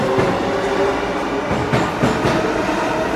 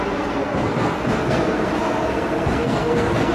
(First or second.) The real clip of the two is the first